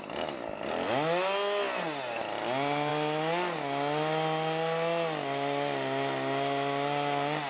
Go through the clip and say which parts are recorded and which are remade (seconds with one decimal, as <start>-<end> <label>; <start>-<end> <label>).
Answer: 0.0-7.5 recorded